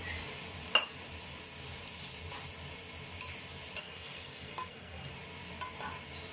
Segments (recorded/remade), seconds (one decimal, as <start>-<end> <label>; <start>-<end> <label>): 0.0-3.8 recorded; 3.8-5.1 remade; 5.1-6.3 recorded